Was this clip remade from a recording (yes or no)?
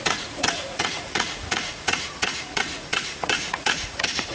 yes